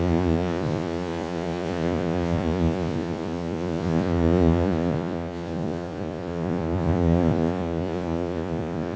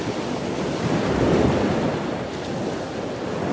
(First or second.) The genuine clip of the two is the second